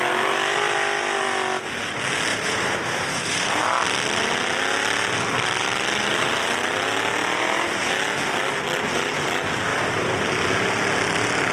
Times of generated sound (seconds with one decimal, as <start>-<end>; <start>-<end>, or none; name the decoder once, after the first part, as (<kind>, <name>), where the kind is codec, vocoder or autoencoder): 2.3-3.6 (vocoder, BigVGAN v2); 7.2-7.9; 9.7-10.4